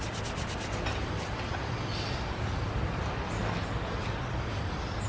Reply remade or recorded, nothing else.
recorded